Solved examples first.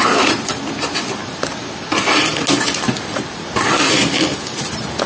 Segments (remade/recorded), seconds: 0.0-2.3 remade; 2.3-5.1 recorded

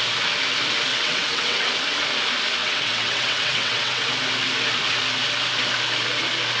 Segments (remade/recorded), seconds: 0.0-0.9 recorded; 0.9-1.6 remade; 1.6-2.6 recorded; 2.6-4.1 remade; 4.1-6.6 recorded

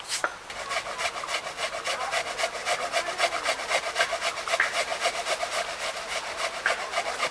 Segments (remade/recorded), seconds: 0.0-7.3 recorded

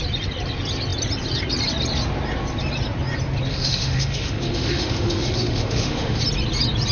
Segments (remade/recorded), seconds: 0.0-3.5 recorded; 3.5-6.2 remade; 6.2-6.9 recorded

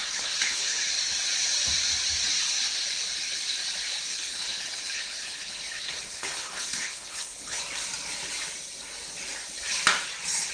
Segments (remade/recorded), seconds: 0.0-0.9 remade; 0.9-4.1 recorded; 4.1-7.6 remade; 7.6-10.5 recorded